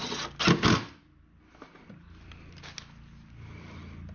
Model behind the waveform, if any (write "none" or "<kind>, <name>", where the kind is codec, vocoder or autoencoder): none